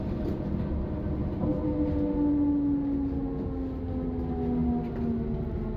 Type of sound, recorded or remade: recorded